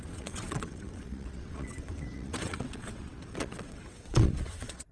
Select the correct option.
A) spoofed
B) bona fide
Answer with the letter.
A